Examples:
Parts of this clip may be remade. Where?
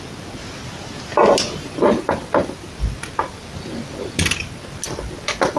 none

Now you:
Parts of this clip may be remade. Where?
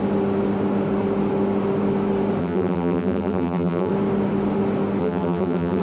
2.4-3.9 (vocoder, BigVGAN v2); 5.0-5.8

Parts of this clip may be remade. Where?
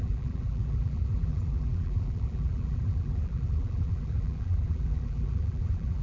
0.0-6.0 (vocoder, BigVGAN v2)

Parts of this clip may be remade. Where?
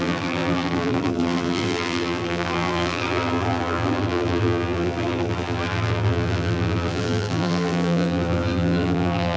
0.0-9.4 (vocoder, BigVGAN v2)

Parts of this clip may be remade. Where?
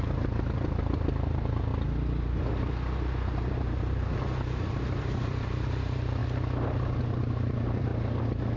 0.0-1.7 (vocoder, BigVGAN v2); 3.5-6.2; 7.0-7.9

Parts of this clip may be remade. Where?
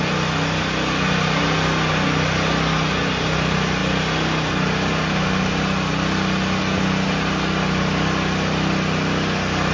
none